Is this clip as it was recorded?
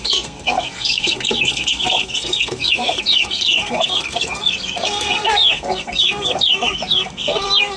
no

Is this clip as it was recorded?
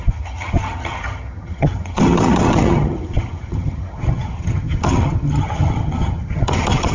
no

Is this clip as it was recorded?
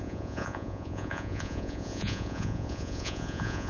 no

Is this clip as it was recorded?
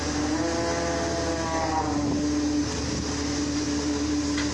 yes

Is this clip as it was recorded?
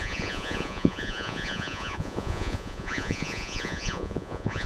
no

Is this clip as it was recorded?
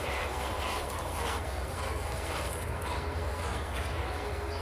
no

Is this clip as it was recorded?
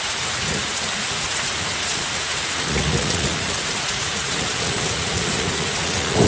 no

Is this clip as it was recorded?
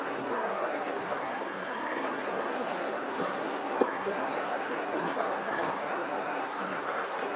no